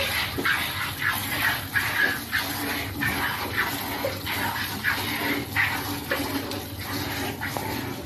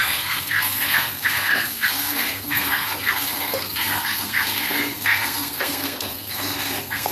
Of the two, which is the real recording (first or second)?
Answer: first